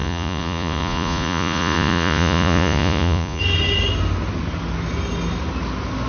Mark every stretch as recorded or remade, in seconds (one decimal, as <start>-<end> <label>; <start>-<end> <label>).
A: 0.0-3.4 remade; 3.4-6.1 recorded